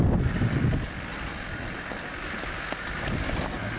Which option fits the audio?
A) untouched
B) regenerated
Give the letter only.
A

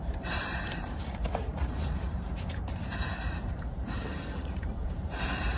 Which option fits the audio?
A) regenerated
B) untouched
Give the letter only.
A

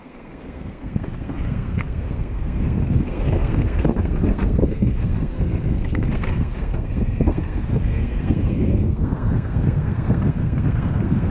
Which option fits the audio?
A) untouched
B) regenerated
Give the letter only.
B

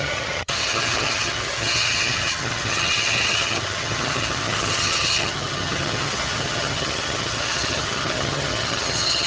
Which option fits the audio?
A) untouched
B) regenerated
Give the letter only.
B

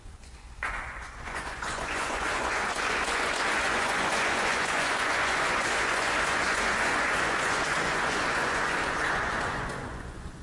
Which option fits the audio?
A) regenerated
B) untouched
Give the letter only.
A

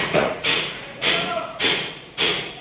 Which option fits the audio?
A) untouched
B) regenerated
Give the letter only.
B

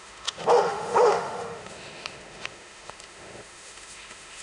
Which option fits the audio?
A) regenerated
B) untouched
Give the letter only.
A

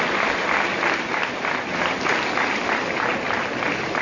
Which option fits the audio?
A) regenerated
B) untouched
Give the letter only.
B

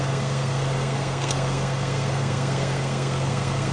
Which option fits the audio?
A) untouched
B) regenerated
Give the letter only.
B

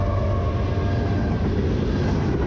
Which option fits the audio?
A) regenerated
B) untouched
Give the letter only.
B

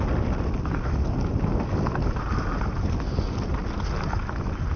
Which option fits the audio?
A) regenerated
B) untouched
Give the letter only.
B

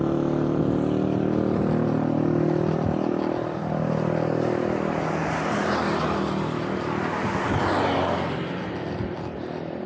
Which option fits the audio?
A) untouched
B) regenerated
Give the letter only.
A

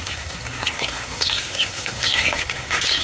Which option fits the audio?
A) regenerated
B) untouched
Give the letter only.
A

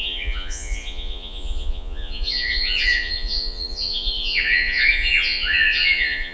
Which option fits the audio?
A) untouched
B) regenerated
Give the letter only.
B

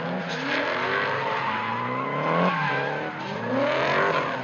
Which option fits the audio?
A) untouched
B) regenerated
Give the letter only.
A